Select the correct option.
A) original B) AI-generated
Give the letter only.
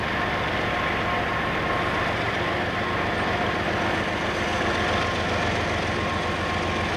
A